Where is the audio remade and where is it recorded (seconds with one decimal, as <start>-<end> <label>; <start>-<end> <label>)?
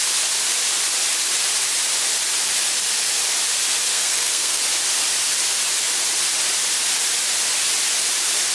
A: 0.0-3.9 recorded; 3.9-4.6 remade; 4.6-8.5 recorded